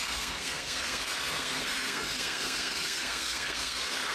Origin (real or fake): fake